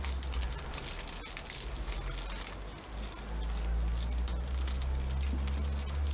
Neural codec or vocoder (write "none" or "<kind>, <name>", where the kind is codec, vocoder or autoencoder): none